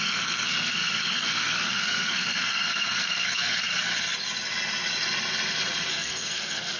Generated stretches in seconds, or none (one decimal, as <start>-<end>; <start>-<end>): 0.0-3.7; 5.9-6.8